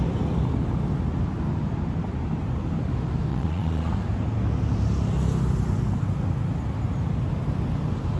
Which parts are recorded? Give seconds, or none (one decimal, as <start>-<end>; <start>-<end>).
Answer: 0.0-3.3; 3.9-8.2